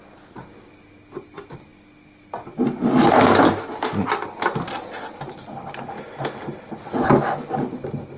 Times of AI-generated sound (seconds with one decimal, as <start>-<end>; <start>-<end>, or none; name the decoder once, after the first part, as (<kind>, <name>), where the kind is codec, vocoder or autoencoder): none